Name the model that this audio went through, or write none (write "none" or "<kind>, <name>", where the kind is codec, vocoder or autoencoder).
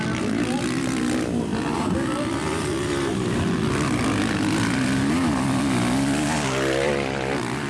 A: none